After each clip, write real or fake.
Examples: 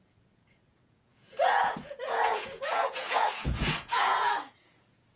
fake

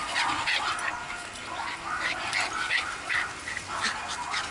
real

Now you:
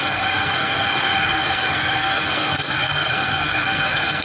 fake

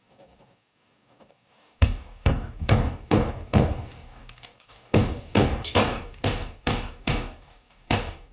fake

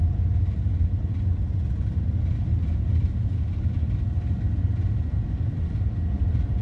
real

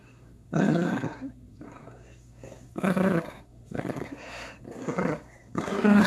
fake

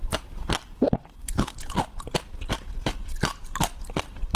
fake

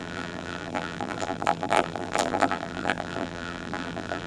fake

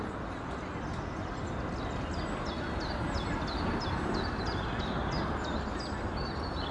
real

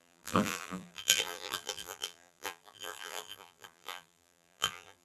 fake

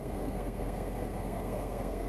fake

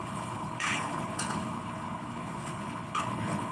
fake